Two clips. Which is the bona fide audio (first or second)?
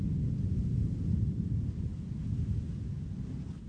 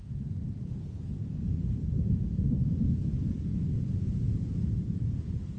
first